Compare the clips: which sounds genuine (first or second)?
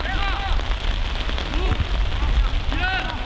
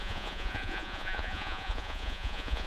first